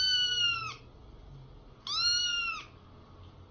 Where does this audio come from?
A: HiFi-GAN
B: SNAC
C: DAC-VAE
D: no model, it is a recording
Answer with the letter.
D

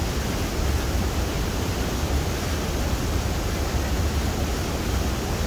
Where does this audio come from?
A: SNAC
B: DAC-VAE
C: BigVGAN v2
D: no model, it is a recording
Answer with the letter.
D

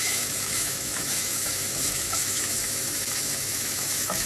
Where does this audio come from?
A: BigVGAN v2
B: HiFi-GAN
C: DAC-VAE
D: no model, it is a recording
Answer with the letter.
C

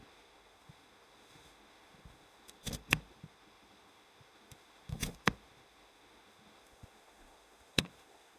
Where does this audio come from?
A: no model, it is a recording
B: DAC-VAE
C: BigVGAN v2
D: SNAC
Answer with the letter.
B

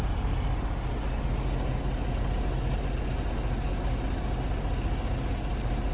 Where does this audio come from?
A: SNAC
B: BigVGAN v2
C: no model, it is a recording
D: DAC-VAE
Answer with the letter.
C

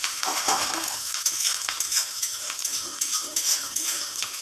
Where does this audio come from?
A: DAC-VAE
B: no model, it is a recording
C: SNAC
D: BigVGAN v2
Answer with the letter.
A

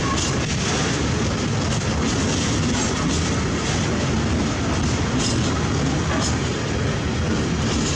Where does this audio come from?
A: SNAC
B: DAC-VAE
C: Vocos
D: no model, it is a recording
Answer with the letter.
D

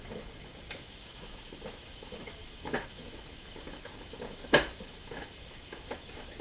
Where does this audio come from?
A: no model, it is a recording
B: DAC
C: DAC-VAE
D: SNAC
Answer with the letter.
C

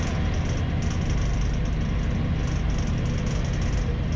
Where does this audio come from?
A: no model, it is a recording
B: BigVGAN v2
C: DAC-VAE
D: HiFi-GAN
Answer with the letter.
A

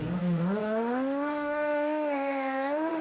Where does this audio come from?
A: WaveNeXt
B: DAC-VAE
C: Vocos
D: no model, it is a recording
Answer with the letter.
B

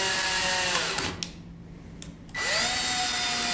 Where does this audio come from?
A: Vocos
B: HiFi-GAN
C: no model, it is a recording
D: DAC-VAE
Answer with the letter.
C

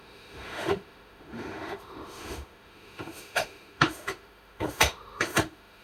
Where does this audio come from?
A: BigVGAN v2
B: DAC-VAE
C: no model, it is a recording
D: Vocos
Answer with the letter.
B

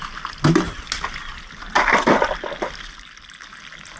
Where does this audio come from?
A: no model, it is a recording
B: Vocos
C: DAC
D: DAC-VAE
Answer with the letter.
A